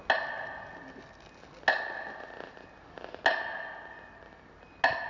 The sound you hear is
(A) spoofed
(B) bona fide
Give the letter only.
B